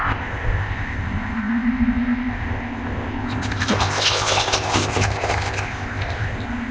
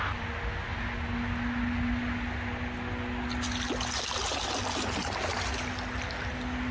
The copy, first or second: first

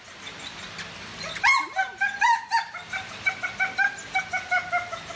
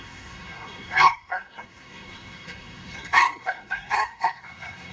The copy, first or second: second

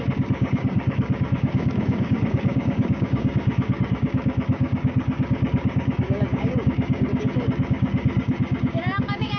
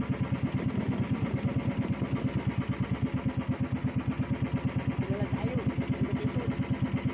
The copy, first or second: first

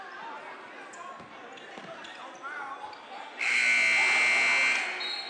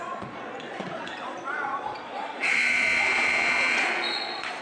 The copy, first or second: second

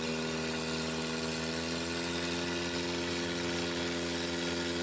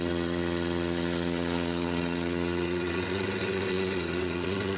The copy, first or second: second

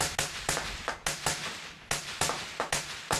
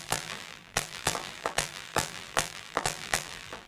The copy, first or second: second